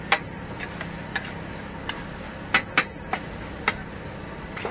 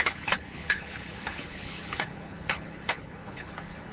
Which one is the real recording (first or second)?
first